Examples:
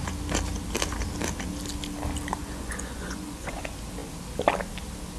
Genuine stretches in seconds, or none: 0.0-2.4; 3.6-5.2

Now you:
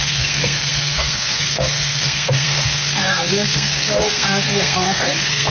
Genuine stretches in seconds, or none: none

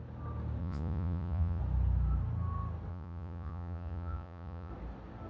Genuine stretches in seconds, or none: 0.0-0.6; 1.6-2.9; 4.7-5.3